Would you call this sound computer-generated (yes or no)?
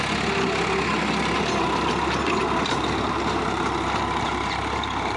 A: no